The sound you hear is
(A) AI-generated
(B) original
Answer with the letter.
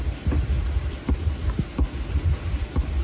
B